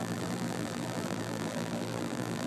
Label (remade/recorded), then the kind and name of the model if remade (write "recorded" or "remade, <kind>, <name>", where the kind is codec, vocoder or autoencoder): remade, vocoder, BigVGAN v2